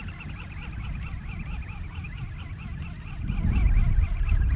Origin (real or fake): real